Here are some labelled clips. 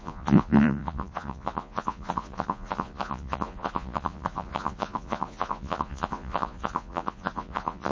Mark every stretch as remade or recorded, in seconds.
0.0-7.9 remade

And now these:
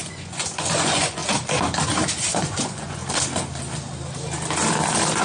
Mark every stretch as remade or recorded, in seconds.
0.0-1.2 remade; 1.2-2.3 recorded; 2.3-3.0 remade; 3.0-5.2 recorded

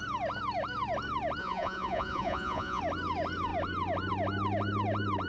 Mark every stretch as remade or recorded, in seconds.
0.0-1.4 recorded; 1.4-2.8 remade; 2.8-5.3 recorded

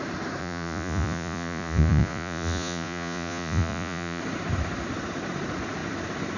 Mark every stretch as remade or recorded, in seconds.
0.0-0.4 recorded; 0.4-4.2 remade; 4.2-6.4 recorded

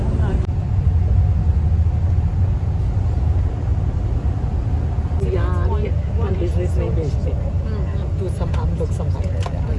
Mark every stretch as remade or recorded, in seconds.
0.0-9.8 recorded

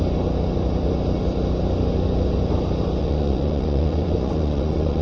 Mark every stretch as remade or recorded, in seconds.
0.0-3.0 recorded; 3.0-5.0 remade

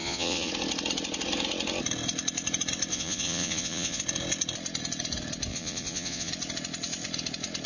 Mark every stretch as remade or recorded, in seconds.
0.0-0.5 remade; 0.5-2.9 recorded; 2.9-4.0 remade; 4.0-5.5 recorded; 5.5-6.3 remade; 6.3-7.7 recorded